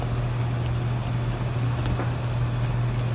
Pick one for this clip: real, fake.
real